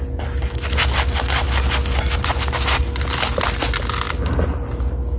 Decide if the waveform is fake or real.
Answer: real